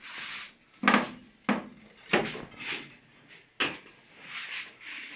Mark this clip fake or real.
real